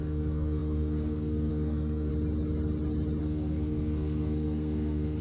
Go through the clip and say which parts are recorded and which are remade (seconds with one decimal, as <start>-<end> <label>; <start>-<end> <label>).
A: 0.0-2.1 remade; 2.1-3.2 recorded; 3.2-5.2 remade